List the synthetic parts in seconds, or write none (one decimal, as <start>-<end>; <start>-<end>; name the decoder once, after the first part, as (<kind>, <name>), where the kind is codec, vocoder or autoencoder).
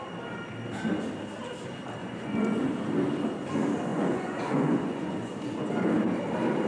2.0-2.7 (vocoder, Vocos); 3.9-5.7